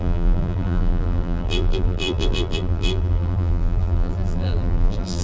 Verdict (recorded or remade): remade